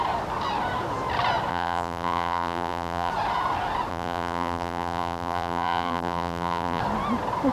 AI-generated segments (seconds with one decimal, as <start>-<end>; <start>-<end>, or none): 1.5-3.1; 3.9-6.8